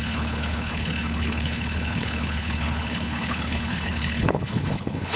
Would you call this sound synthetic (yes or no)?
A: yes